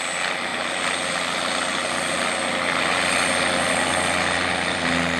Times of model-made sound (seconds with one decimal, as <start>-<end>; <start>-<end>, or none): none